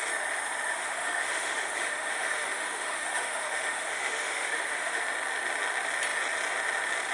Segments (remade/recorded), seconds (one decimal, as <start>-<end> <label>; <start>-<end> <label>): 0.0-0.7 recorded; 0.7-5.0 remade; 5.0-7.1 recorded